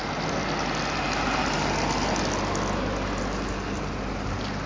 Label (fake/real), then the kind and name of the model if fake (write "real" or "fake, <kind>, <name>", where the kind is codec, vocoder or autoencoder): real